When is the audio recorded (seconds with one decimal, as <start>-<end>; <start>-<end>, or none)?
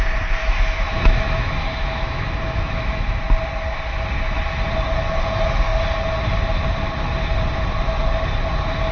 0.0-0.4; 3.2-8.9